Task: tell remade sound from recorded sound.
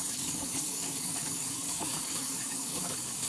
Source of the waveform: remade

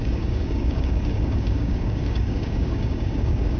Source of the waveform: remade